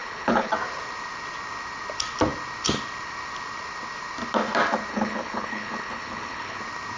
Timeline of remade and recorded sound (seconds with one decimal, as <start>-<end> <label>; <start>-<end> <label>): 0.0-0.5 remade; 0.5-4.9 recorded; 4.9-6.6 remade; 6.6-7.0 recorded

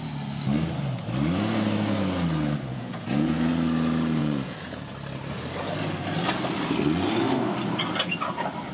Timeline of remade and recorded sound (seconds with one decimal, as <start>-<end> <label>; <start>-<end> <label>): 0.0-2.7 recorded; 2.7-3.5 remade; 3.5-4.2 recorded; 4.2-4.9 remade; 4.9-8.7 recorded